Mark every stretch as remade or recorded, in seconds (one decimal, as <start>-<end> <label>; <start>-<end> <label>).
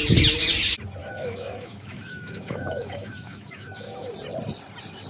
0.0-1.0 recorded; 1.0-4.1 remade; 4.1-5.1 recorded